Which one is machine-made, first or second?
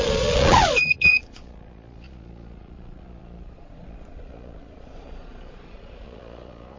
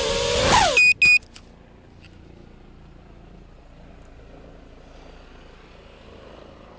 first